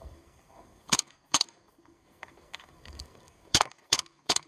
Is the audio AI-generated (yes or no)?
yes